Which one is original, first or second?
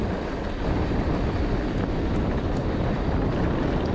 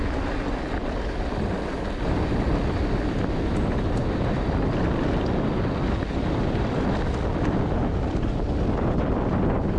second